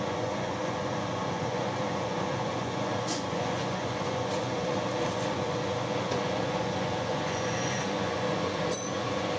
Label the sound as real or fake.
fake